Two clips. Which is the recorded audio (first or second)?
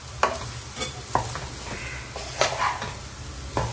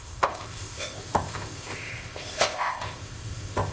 first